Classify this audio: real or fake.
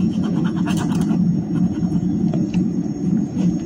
fake